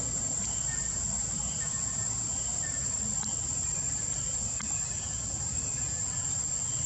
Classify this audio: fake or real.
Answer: real